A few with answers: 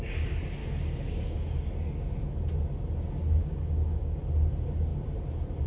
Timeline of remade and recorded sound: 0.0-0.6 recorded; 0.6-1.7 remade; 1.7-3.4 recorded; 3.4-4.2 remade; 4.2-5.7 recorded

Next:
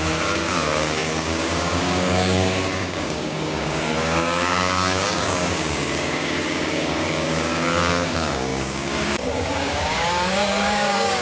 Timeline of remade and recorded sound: 0.0-11.2 remade

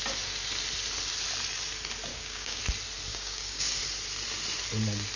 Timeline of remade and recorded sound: 0.0-2.1 recorded; 2.1-2.6 remade; 2.6-3.1 recorded; 3.1-3.8 remade; 3.8-5.2 recorded

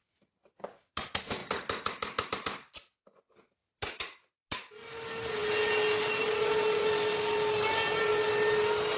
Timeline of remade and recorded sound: 0.0-9.0 recorded